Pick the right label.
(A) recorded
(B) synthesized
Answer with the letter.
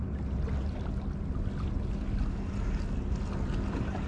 A